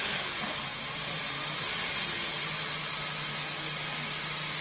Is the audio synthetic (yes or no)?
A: no